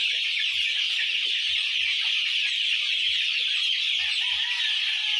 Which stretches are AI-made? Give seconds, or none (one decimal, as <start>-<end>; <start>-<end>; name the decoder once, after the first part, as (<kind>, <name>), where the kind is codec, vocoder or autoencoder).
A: 0.0-3.1 (vocoder, BigVGAN v2)